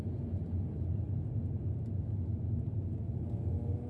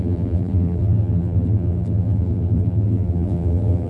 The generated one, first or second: second